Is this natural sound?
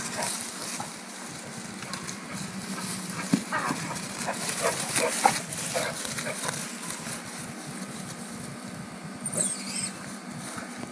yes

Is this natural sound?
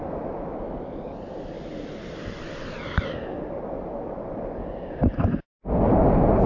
yes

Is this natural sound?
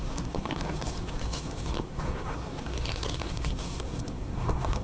no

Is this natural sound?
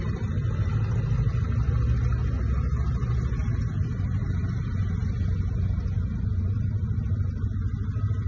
yes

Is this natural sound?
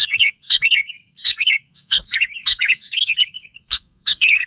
no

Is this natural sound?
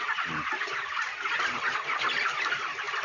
yes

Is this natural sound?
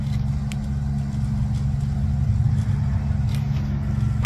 yes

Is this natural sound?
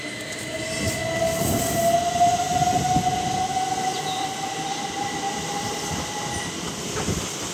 yes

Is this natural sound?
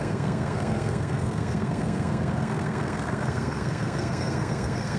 no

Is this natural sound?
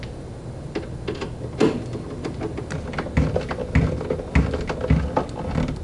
yes